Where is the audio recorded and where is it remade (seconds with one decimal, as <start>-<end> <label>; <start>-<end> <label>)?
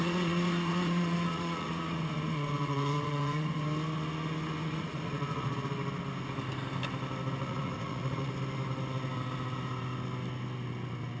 0.0-3.6 remade; 3.6-4.6 recorded; 4.6-5.7 remade; 5.7-7.4 recorded; 7.4-8.3 remade; 8.3-11.2 recorded